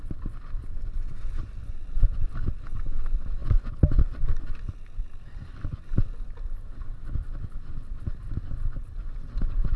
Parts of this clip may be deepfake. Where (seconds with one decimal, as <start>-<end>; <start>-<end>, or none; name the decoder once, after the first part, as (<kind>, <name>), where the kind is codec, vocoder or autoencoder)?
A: none